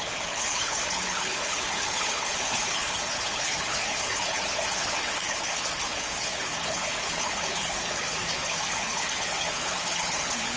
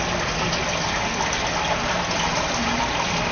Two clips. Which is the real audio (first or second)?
second